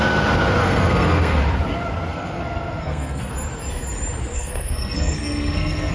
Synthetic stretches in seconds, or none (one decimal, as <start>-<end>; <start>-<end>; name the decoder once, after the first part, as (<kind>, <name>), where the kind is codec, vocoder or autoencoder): 0.6-1.4 (codec, SNAC); 2.1-3.3; 4.2-5.9